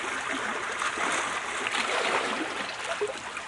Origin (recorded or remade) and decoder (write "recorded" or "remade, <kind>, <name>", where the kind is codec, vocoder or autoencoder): recorded